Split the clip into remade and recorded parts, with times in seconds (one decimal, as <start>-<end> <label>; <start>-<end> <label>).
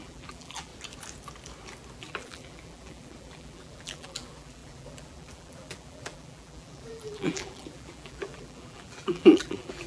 0.0-0.7 remade; 0.7-2.0 recorded; 2.0-9.9 remade